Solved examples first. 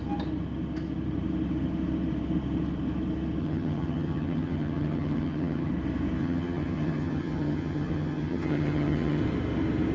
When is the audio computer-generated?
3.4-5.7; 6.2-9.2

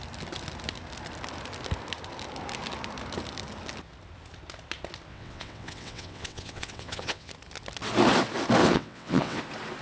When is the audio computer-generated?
5.1-7.3; 8.6-9.4

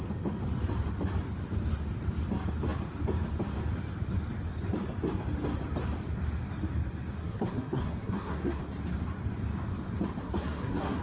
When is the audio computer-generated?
7.2-8.6; 10.2-11.0

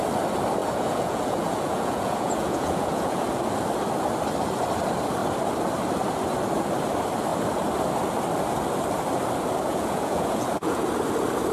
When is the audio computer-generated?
0.6-3.4; 9.7-10.9